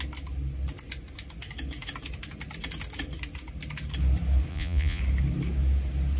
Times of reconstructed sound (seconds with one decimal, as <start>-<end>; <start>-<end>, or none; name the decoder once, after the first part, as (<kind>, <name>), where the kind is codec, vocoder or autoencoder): 4.5-5.0 (vocoder, Vocos)